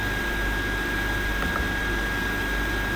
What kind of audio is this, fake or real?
real